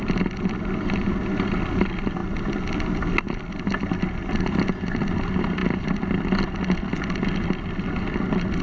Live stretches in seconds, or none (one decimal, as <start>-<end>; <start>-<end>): 0.0-8.6